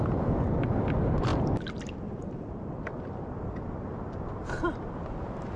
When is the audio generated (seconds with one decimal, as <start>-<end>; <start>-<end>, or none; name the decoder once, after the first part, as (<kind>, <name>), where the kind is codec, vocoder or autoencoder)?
1.3-2.5 (vocoder, BigVGAN v2)